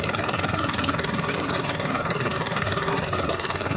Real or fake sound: fake